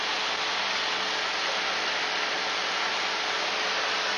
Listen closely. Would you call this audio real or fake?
real